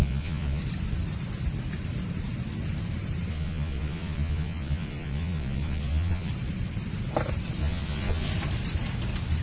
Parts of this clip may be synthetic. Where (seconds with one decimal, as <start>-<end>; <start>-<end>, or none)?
0.0-0.6; 3.3-6.3; 7.6-8.3